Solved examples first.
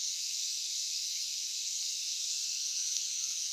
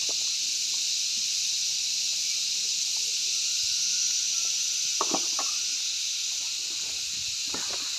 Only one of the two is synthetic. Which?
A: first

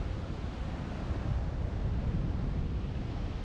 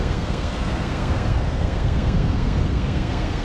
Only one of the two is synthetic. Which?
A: second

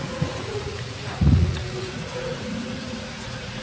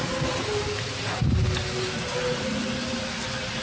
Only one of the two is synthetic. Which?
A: first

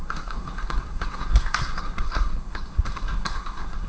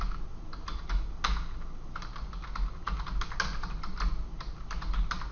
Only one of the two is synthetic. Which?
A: first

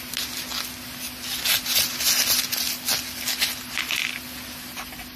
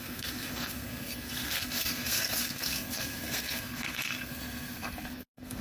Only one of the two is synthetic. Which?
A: second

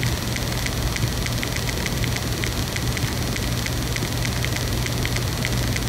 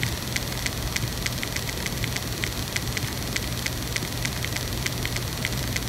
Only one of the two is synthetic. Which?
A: second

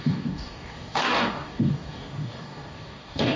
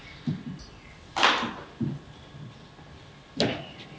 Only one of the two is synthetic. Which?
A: first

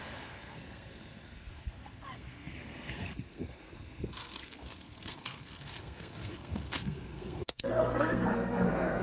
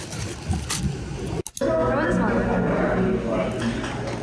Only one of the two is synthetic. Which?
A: first